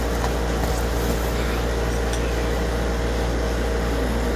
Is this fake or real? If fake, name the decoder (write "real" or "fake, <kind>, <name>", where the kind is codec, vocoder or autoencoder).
real